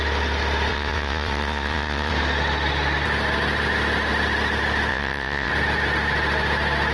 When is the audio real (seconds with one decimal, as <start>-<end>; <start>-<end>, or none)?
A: 0.0-0.7; 2.1-4.9; 5.5-6.9